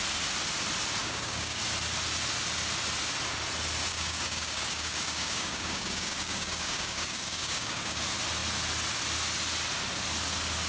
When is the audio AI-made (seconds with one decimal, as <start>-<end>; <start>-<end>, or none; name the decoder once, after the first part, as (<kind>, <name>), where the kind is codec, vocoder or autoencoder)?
1.0-1.6 (codec, DAC); 3.9-8.0

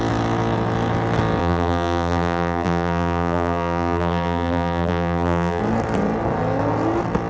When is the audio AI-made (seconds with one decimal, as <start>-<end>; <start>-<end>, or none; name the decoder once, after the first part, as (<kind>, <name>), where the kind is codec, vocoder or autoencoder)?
1.4-5.6 (vocoder, BigVGAN v2)

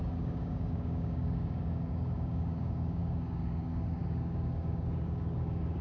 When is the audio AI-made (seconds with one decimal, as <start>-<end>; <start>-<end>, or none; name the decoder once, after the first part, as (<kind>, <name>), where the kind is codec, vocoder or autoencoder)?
0.0-5.8 (codec, DAC)

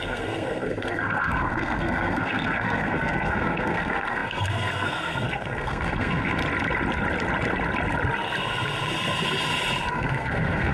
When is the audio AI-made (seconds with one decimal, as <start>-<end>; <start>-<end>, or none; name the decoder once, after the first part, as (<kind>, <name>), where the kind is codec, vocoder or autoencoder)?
0.0-6.4 (codec, SNAC); 9.9-10.7